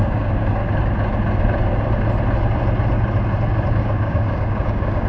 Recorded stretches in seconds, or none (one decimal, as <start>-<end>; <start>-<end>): 0.6-3.7